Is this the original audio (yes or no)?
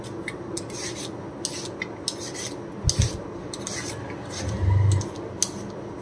yes